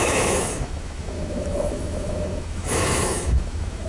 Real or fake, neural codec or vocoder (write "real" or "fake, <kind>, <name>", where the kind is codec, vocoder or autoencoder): fake, autoencoder, DAC-VAE